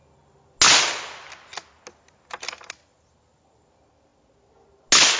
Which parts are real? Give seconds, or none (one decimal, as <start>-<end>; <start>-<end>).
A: 0.0-5.2